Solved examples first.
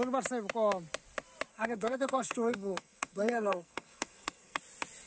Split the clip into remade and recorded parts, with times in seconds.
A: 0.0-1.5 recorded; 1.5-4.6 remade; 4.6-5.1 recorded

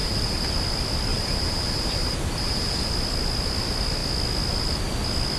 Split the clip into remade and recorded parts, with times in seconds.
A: 0.0-0.5 remade; 0.5-1.1 recorded; 1.1-2.9 remade; 2.9-5.4 recorded

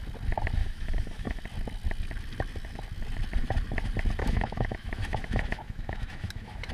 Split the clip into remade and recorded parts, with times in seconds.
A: 0.0-0.6 recorded; 0.6-1.4 remade; 1.4-4.2 recorded; 4.2-6.7 remade

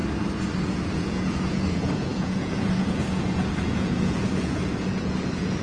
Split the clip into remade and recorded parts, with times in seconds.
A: 0.0-0.9 recorded; 0.9-5.6 remade

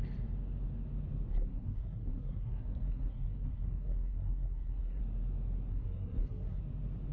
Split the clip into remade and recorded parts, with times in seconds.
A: 0.0-1.3 recorded; 1.3-5.0 remade; 5.0-5.7 recorded; 5.7-6.6 remade; 6.6-7.1 recorded

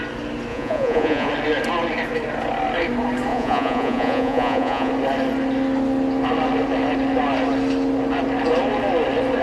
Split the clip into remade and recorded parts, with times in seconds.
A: 0.0-0.5 recorded; 0.5-1.3 remade; 1.3-3.3 recorded; 3.3-4.9 remade; 4.9-9.4 recorded

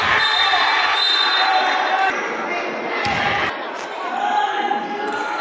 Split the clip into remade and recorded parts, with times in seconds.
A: 0.0-4.5 recorded; 4.5-5.4 remade

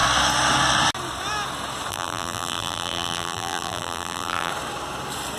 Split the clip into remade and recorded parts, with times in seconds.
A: 0.0-1.9 recorded; 1.9-4.5 remade; 4.5-5.4 recorded